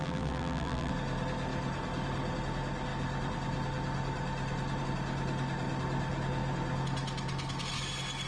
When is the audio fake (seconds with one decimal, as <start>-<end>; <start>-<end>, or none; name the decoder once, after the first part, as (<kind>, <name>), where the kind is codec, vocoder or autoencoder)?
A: 0.0-0.9 (vocoder, BigVGAN v2)